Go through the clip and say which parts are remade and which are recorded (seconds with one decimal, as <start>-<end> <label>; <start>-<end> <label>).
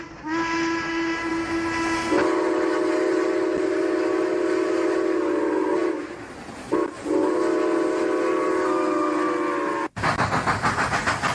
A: 0.0-11.3 recorded